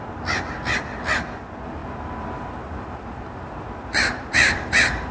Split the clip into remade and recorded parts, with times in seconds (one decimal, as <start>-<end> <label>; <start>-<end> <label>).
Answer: 0.0-1.8 recorded; 1.8-5.1 remade